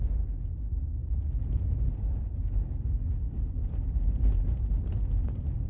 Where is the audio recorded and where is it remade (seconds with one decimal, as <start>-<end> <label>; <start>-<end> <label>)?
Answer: 0.0-5.7 recorded